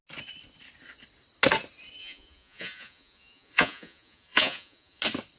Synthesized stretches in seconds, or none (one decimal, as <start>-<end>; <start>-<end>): 2.0-5.0